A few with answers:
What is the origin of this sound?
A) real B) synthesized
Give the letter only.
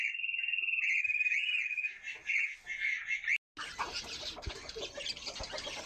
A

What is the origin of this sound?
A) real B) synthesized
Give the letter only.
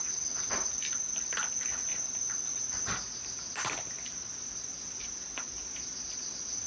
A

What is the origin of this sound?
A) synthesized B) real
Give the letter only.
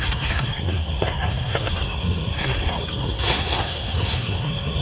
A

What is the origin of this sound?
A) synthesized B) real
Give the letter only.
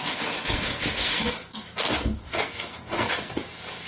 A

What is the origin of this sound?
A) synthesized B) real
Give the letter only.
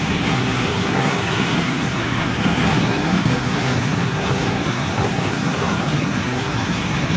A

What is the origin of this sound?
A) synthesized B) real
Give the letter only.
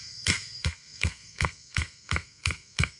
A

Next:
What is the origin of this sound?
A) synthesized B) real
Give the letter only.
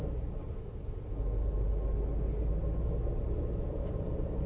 B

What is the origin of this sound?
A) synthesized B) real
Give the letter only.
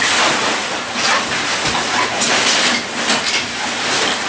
B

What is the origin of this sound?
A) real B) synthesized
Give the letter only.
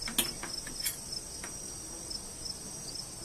A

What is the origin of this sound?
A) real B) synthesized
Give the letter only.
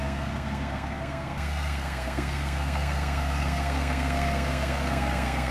B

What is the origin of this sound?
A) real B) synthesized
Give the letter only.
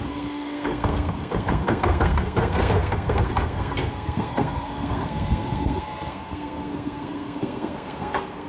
B